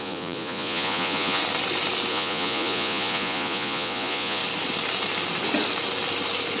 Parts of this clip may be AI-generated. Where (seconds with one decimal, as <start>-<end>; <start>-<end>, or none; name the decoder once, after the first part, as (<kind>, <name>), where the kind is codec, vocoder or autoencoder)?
0.0-1.4 (vocoder, Vocos); 2.1-4.4